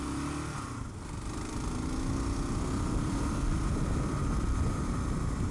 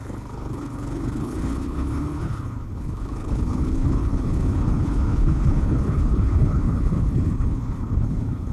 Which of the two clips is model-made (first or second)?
second